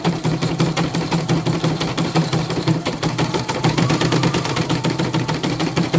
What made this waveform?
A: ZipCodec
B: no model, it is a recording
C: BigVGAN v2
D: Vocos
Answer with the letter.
C